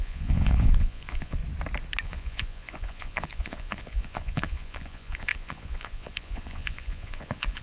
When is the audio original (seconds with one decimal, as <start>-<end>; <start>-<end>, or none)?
1.4-2.0